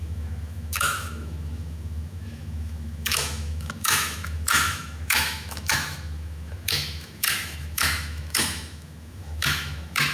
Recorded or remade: remade